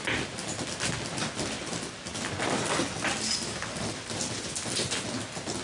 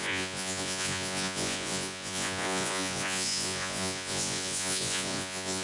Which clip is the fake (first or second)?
second